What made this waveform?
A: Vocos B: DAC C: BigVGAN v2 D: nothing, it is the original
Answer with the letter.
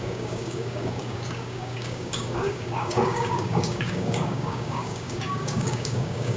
B